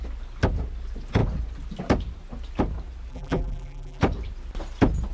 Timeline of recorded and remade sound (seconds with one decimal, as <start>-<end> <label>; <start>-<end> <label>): 0.0-3.1 recorded; 3.1-4.0 remade; 4.0-5.1 recorded